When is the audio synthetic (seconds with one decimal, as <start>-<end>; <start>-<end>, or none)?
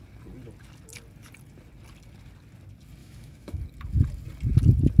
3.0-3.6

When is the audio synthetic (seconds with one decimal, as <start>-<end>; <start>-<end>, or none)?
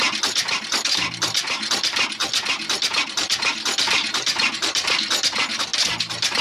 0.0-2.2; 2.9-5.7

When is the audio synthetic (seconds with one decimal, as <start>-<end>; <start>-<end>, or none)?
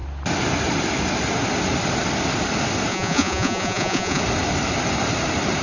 2.9-4.2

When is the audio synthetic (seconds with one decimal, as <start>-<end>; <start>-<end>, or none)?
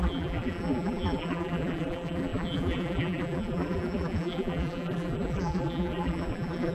0.0-6.7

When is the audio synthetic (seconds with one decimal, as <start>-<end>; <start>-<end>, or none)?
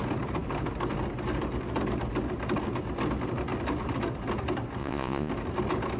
4.8-5.3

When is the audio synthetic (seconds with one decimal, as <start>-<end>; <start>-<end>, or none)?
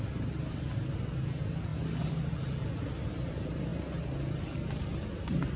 none